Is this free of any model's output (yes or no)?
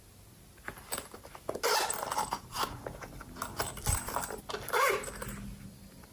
yes